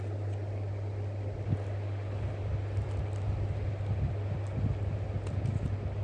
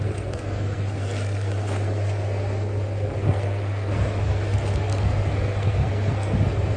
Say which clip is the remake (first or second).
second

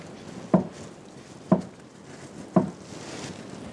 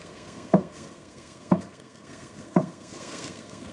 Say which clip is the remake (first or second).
second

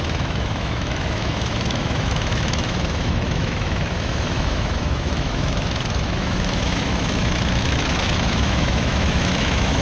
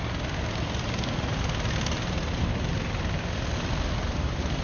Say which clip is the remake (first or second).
first